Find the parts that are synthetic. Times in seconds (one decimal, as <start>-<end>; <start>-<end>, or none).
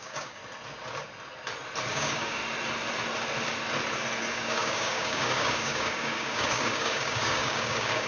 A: 0.0-0.4; 1.9-2.4; 4.3-8.1